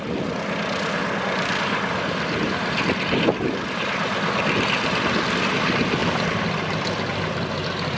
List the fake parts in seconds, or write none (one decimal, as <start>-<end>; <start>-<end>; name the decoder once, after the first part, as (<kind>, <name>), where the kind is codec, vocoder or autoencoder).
none